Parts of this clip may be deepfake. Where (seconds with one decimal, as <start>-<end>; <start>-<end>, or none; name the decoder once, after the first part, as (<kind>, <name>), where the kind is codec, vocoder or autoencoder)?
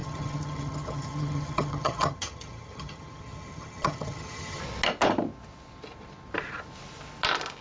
0.0-4.6 (vocoder, HiFi-GAN)